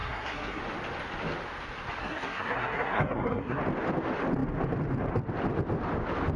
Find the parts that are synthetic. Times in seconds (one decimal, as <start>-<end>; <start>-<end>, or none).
0.0-0.6; 2.0-3.6